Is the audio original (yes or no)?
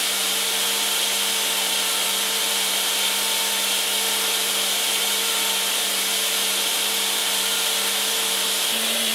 no